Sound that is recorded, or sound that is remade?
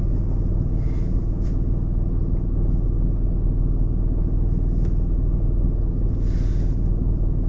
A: recorded